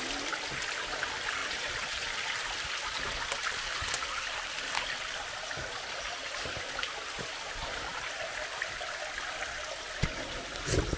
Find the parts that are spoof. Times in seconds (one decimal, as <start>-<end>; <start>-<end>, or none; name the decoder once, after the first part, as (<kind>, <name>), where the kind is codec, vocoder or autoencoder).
none